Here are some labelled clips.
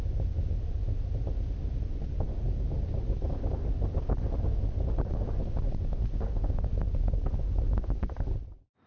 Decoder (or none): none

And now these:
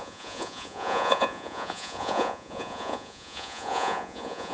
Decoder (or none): vocoder, Vocos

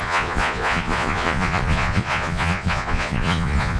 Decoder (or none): vocoder, Vocos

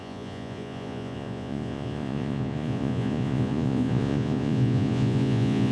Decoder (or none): vocoder, Vocos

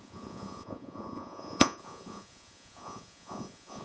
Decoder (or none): vocoder, Vocos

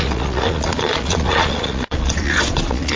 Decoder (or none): vocoder, Vocos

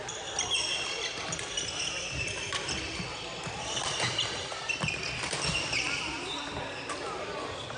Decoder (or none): none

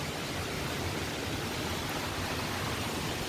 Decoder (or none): none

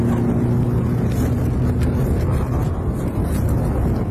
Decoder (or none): none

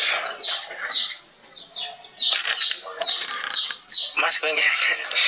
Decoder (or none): none